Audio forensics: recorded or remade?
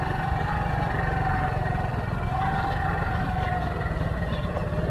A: recorded